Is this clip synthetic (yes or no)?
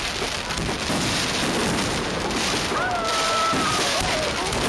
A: yes